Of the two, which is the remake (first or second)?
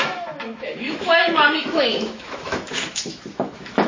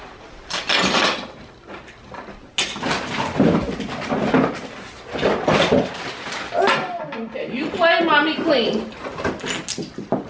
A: first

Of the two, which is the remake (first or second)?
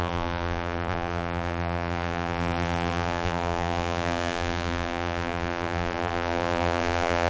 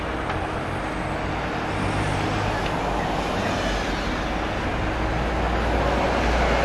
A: first